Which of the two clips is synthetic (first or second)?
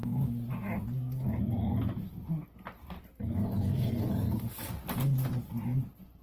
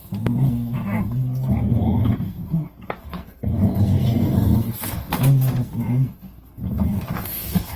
second